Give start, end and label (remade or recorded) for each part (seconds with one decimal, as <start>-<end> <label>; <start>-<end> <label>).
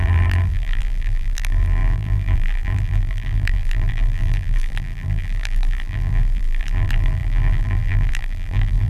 0.0-8.9 remade